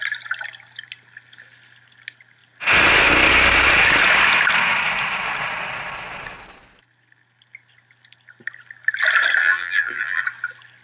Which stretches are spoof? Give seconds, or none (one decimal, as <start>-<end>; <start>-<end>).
9.4-10.2